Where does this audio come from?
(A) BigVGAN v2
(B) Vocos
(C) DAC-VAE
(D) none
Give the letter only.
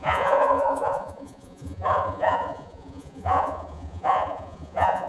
B